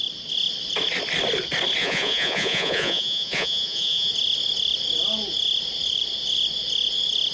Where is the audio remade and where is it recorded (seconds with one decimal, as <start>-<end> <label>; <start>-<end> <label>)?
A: 0.0-1.8 recorded; 1.8-4.1 remade; 4.1-7.3 recorded